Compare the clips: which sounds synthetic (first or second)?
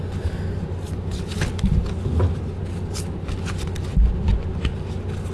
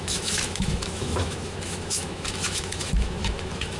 second